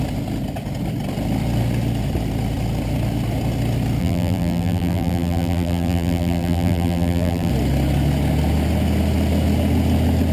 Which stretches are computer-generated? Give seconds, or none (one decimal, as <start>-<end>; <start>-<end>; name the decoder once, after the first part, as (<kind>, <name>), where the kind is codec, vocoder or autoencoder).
4.0-7.5 (vocoder, BigVGAN v2)